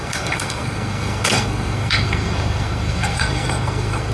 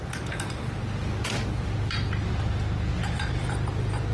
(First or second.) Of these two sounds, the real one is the second